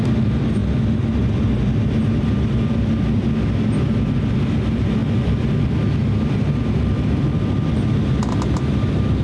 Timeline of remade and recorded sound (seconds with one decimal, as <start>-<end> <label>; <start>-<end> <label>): 0.0-9.2 recorded